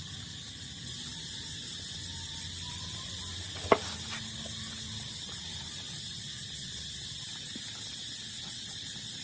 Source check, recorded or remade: recorded